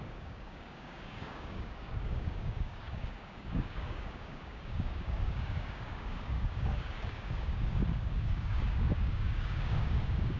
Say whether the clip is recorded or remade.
remade